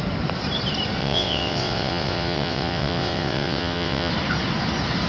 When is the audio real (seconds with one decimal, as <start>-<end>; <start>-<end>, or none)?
0.0-1.0; 4.1-5.1